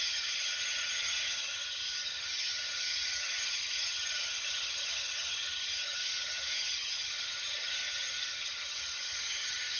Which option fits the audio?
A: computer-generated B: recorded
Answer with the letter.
A